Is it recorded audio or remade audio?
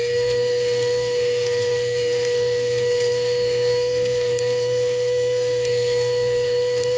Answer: remade